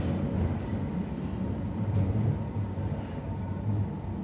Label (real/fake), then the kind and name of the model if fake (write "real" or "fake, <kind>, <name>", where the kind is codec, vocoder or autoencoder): real